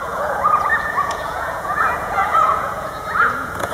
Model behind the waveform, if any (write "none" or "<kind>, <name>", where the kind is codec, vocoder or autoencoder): vocoder, Vocos